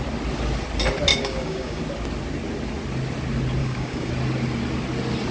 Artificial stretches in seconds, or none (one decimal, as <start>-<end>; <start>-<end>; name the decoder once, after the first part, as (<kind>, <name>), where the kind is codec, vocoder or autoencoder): 1.1-1.8 (codec, DAC); 3.6-4.1